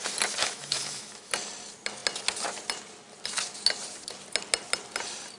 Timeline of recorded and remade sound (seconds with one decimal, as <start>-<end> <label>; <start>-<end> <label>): 0.0-0.4 recorded; 0.4-1.3 remade; 1.3-5.4 recorded